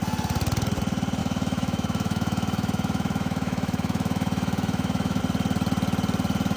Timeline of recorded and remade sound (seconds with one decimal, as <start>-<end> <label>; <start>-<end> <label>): 0.0-1.2 recorded; 1.2-5.2 remade; 5.2-6.6 recorded